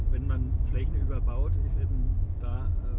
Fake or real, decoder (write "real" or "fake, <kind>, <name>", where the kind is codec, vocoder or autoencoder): real